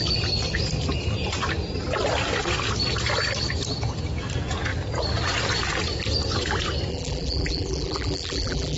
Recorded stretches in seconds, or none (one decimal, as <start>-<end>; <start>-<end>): 0.0-6.9